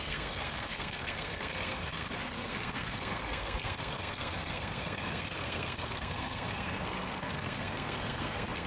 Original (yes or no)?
no